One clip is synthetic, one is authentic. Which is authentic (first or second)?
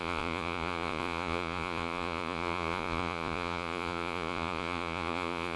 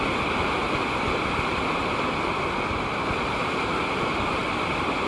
second